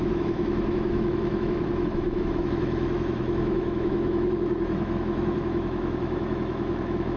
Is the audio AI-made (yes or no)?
yes